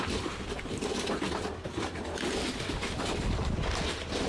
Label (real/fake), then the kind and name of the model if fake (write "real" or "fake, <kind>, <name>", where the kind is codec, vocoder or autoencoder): real